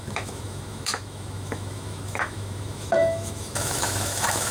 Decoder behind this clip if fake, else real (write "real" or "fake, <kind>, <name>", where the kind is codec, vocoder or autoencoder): fake, autoencoder, DAC-VAE